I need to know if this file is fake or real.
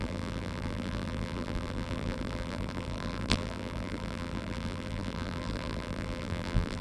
fake